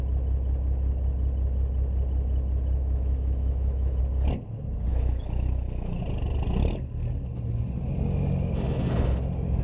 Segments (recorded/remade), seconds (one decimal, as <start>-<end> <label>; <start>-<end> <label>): 0.0-2.8 recorded; 2.8-4.0 remade; 4.0-4.9 recorded; 4.9-6.0 remade; 6.0-9.6 recorded